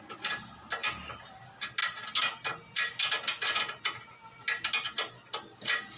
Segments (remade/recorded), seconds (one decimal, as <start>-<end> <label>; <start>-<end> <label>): 0.0-6.0 recorded